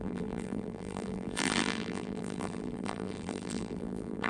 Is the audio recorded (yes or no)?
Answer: no